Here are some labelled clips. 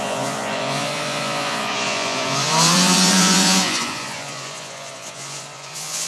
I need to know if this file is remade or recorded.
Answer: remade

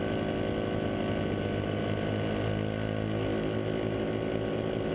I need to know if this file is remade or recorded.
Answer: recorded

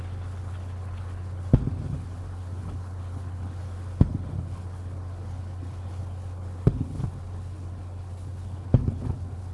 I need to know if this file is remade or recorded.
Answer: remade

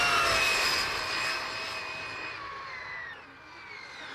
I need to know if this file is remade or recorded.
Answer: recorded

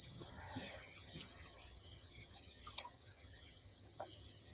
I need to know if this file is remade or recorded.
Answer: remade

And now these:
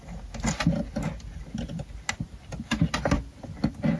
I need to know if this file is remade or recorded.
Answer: recorded